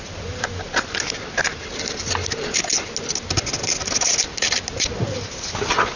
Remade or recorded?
recorded